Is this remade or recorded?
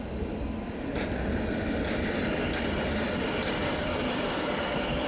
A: recorded